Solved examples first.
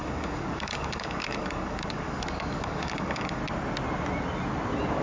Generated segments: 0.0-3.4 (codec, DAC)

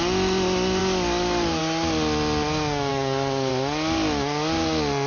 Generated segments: 0.8-1.6 (codec, DAC); 2.9-3.5

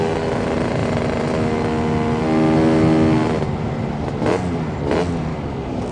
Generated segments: 5.3-5.9 (codec, DAC)